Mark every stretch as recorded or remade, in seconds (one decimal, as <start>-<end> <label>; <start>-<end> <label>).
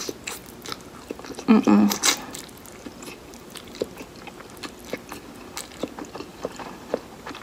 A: 0.0-6.3 recorded; 6.3-7.4 remade